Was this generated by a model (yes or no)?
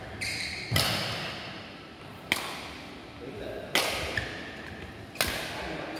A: no